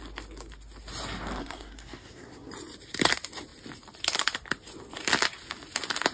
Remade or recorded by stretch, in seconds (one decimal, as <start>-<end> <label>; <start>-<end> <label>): 0.0-1.4 recorded; 1.4-2.5 remade; 2.5-6.1 recorded